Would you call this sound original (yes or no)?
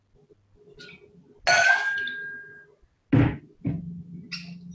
yes